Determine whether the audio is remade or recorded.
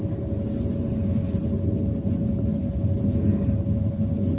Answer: recorded